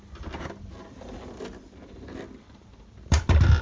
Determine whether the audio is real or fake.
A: fake